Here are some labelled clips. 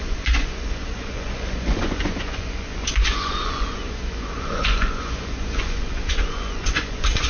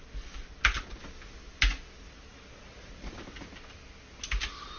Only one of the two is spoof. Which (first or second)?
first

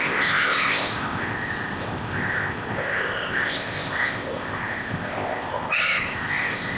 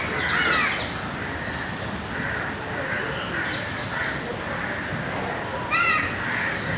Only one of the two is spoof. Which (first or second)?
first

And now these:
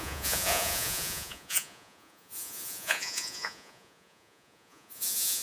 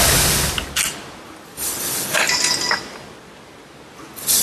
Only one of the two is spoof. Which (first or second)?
first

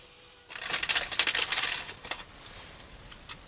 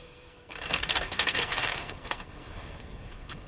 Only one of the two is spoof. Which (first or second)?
second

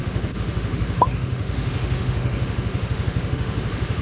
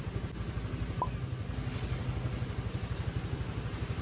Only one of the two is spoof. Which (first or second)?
first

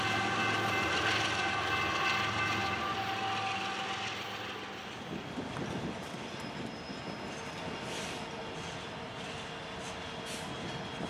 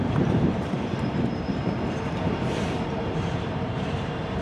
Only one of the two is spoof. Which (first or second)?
second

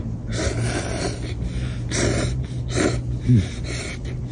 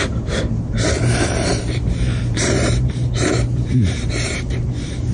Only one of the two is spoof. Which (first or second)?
second